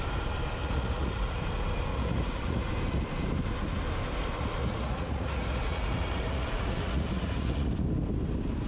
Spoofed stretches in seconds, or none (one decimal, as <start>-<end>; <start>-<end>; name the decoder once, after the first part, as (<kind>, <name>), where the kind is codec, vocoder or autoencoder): 0.6-1.4 (vocoder, Vocos); 1.9-2.7; 4.3-7.7